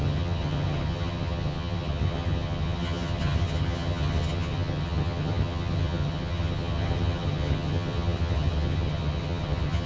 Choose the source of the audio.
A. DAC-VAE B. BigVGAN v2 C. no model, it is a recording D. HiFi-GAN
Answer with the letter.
D